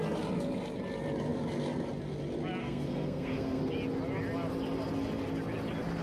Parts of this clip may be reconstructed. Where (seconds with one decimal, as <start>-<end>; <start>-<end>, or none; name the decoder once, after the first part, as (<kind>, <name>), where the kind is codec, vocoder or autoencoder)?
2.6-3.6 (codec, SNAC)